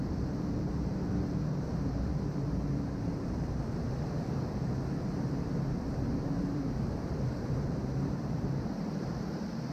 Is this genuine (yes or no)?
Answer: no